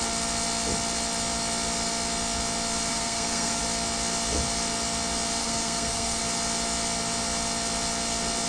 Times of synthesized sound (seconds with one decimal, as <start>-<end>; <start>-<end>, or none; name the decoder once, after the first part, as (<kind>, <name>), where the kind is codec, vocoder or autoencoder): 2.9-3.6 (codec, SNAC); 5.4-6.2